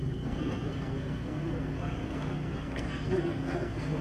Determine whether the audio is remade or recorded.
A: remade